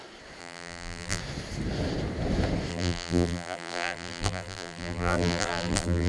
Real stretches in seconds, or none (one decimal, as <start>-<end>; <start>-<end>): 0.0-0.4; 1.2-2.7